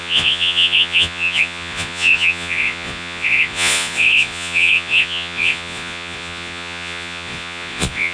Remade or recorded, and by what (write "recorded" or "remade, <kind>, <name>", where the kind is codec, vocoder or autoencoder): remade, vocoder, Vocos